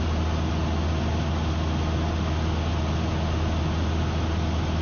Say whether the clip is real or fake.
real